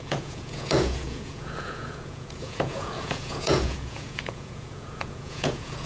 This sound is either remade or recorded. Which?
remade